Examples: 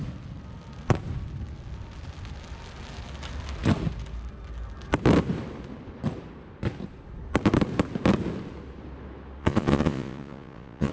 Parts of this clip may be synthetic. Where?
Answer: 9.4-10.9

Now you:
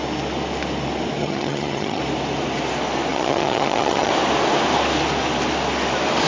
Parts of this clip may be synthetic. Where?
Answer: 1.2-2.0; 3.1-4.1

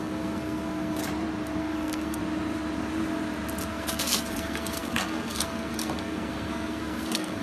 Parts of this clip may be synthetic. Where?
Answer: 0.0-1.0; 1.6-2.2; 3.7-7.4

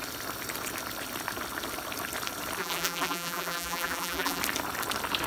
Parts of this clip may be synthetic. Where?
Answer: 2.6-4.4

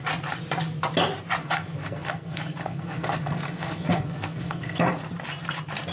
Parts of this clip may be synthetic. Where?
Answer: 1.4-4.9

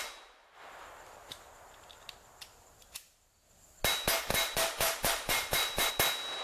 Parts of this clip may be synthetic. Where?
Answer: 4.3-5.9

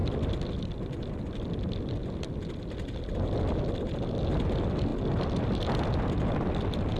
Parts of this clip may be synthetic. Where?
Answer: none